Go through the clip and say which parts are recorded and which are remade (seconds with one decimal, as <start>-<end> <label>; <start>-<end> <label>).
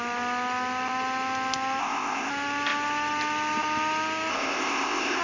0.0-1.8 recorded; 1.8-2.3 remade; 2.3-4.3 recorded; 4.3-5.2 remade